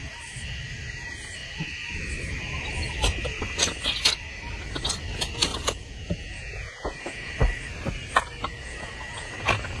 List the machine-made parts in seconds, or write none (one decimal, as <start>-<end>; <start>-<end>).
5.5-7.3; 8.6-9.3